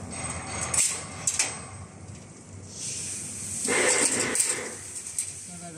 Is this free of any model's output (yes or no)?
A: yes